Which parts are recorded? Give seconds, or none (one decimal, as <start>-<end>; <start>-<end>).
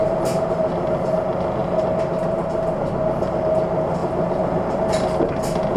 0.6-4.0; 4.8-5.8